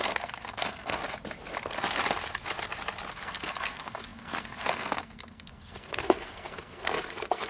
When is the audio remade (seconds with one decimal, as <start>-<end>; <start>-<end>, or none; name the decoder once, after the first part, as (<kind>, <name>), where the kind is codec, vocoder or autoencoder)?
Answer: 0.0-1.0 (codec, SNAC); 3.1-7.5